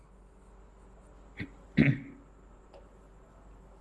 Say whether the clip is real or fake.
real